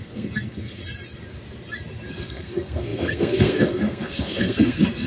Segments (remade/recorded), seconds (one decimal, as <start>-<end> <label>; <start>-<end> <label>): 0.0-0.8 remade; 0.8-2.1 recorded; 2.1-5.1 remade